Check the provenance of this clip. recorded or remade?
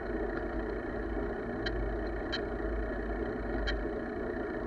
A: recorded